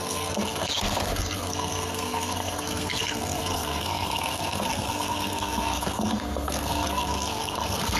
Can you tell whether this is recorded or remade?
remade